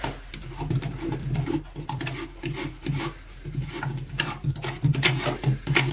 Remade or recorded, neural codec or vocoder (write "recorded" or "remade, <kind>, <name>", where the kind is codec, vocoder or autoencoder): recorded